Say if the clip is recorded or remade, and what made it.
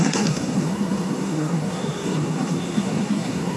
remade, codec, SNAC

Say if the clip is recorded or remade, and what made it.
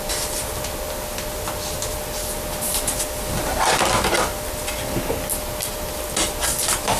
recorded